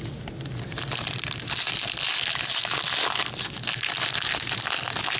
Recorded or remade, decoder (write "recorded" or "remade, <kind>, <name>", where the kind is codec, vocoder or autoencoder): recorded